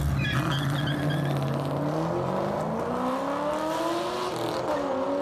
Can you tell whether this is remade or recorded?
recorded